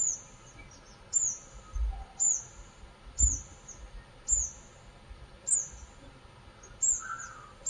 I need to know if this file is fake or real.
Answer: real